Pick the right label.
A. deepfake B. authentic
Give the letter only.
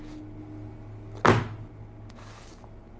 B